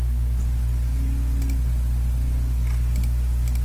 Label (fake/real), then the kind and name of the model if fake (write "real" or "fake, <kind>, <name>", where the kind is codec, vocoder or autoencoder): real